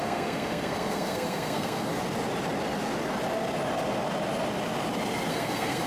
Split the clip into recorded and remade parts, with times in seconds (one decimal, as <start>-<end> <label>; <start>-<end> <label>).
0.0-1.9 remade; 1.9-5.3 recorded; 5.3-5.9 remade